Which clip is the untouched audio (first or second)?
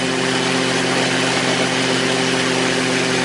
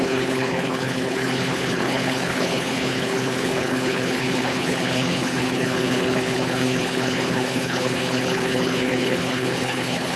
first